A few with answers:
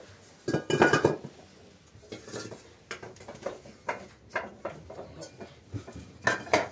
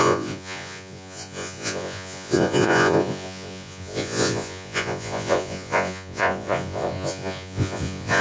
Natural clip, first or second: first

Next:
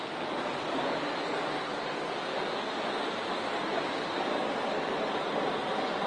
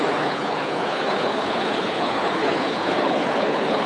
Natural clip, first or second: first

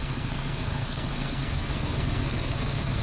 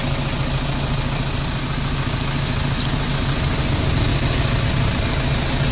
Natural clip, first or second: second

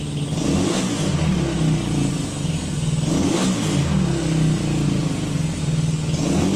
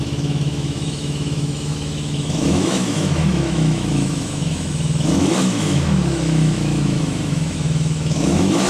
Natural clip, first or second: first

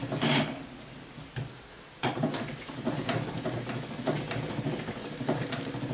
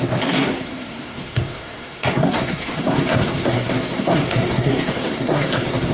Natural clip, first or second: first